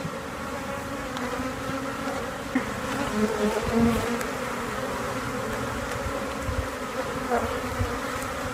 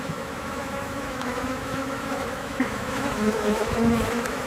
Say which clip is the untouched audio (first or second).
first